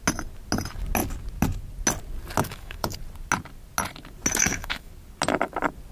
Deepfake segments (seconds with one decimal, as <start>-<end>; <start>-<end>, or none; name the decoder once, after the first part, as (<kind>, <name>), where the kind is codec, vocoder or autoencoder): 2.4-3.0 (autoencoder, DAC-VAE); 4.4-4.9